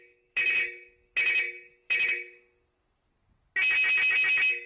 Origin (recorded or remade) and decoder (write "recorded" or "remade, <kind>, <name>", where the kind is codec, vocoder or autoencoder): recorded